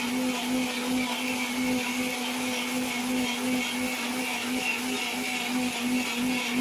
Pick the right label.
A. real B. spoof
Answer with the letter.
A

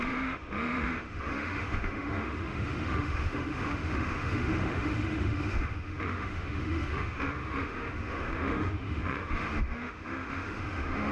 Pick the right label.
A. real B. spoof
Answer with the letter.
B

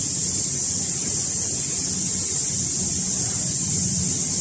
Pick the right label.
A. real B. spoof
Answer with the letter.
A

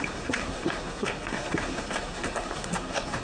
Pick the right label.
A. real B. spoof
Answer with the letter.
B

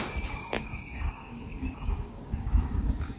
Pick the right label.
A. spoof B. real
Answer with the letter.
A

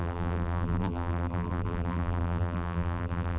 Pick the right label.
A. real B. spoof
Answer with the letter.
B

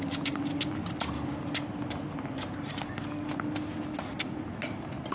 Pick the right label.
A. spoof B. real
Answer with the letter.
B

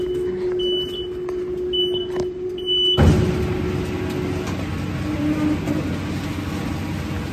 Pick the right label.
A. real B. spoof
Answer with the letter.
A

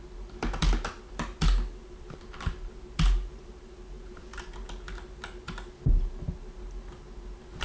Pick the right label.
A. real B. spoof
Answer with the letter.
A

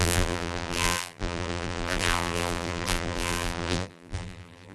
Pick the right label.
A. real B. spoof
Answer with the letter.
B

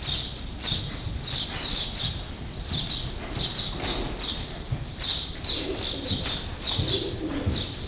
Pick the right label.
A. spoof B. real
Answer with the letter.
B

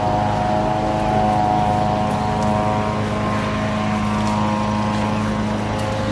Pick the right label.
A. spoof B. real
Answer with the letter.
B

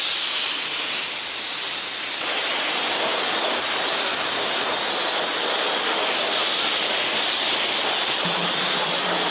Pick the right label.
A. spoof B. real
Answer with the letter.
B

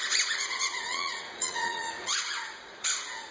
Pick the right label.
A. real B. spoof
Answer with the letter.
B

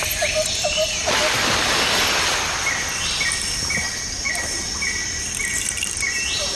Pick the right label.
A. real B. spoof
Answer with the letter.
B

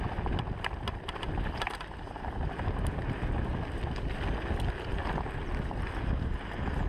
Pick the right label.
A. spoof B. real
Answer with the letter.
B